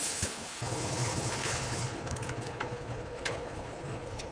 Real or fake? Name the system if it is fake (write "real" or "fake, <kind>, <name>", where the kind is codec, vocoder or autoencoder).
fake, codec, HILCodec